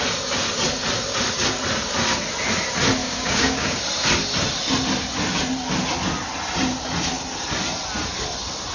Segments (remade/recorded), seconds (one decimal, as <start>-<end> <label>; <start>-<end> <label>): 0.0-3.0 recorded; 3.0-3.8 remade; 3.8-8.7 recorded

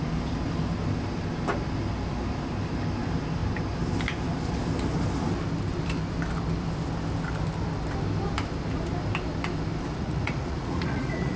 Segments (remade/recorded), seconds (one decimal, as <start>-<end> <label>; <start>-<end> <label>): 0.0-9.9 recorded; 9.9-11.4 remade

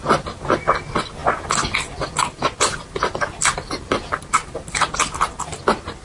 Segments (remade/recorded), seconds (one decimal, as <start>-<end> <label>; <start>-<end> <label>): 0.0-6.0 recorded

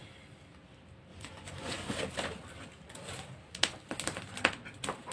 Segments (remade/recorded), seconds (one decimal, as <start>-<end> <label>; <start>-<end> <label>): 0.0-1.1 recorded; 1.1-2.0 remade; 2.0-5.1 recorded

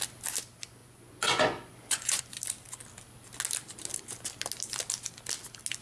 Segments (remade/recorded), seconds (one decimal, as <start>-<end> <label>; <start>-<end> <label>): 0.0-0.8 recorded; 0.8-2.2 remade; 2.2-5.8 recorded

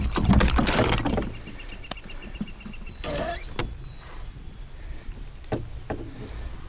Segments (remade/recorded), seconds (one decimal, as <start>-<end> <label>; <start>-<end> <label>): 0.0-3.6 recorded; 3.6-5.6 remade; 5.6-6.7 recorded